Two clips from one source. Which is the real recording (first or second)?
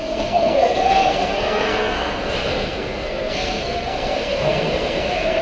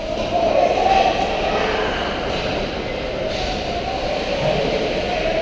second